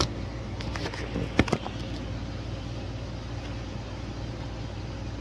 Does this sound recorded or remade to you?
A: recorded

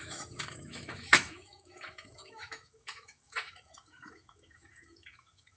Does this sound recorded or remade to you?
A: remade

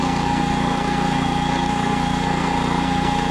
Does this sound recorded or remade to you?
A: remade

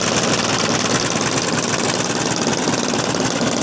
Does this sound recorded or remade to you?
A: recorded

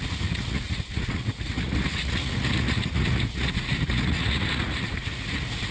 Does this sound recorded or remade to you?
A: remade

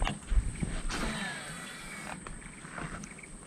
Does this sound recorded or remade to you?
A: remade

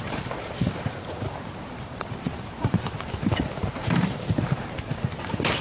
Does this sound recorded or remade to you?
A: remade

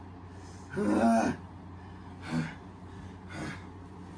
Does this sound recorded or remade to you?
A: recorded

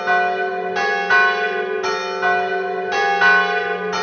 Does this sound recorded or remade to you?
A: recorded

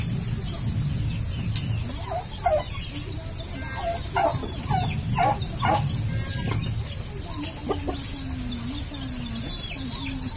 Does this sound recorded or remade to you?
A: recorded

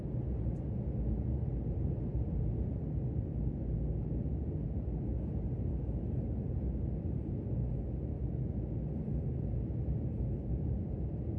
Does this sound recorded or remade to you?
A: recorded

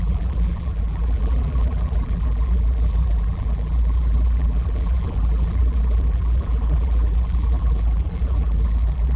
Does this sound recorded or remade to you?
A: remade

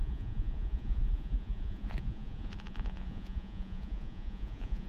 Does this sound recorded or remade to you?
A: remade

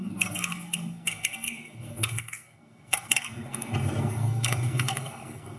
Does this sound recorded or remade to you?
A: remade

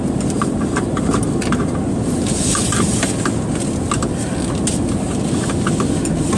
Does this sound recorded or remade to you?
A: recorded